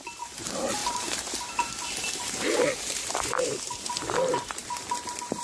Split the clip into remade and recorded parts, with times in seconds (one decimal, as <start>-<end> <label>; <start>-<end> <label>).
0.0-4.6 remade; 4.6-5.4 recorded